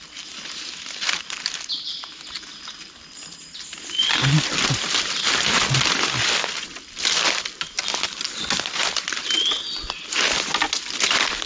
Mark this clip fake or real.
real